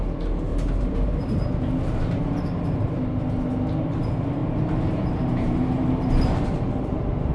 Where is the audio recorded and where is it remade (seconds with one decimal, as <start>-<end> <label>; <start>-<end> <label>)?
0.0-0.5 recorded; 0.5-2.4 remade; 2.4-4.4 recorded; 4.4-7.3 remade